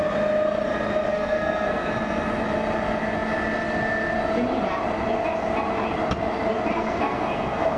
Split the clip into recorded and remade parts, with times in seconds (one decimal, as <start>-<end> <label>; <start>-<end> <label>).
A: 0.0-1.1 recorded; 1.1-1.9 remade; 1.9-6.7 recorded; 6.7-7.8 remade